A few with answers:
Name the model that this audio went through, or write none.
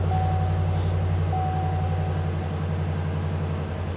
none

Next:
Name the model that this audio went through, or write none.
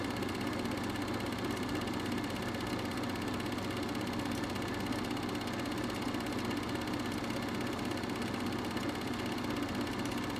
none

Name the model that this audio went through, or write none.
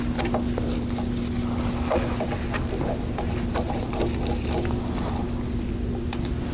none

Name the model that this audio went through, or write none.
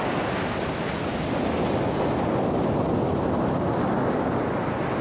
none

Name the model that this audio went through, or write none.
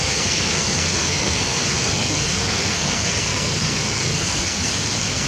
codec, SNAC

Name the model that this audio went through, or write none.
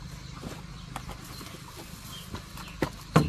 none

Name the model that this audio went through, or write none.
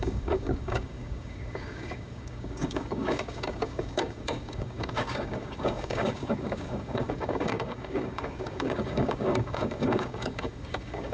codec, DAC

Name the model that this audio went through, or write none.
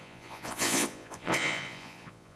vocoder, Vocos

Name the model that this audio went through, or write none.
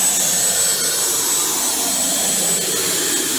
none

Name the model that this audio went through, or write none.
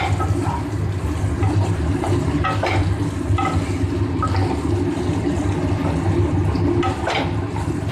none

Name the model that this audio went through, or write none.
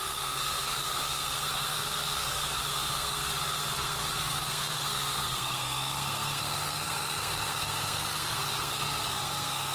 codec, SNAC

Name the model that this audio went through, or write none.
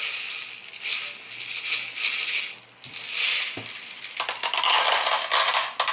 none